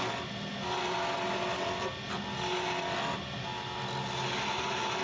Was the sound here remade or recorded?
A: recorded